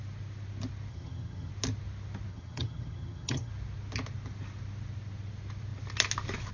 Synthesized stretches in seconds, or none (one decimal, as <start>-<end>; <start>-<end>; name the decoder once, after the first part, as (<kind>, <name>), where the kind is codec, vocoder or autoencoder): 0.9-1.5 (vocoder, HiFi-GAN); 2.3-3.5